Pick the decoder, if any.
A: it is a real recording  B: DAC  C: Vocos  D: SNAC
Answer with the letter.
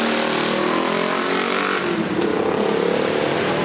A